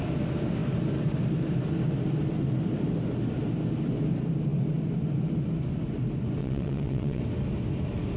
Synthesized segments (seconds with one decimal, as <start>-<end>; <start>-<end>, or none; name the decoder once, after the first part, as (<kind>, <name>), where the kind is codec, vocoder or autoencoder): 6.4-7.2 (vocoder, WaveNeXt)